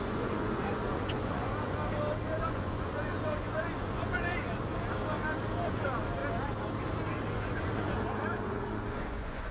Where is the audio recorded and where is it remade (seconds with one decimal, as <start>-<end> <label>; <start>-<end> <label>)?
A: 0.0-1.8 remade; 1.8-2.4 recorded; 2.4-4.7 remade; 4.7-5.7 recorded; 5.7-6.2 remade; 6.2-7.3 recorded; 7.3-9.5 remade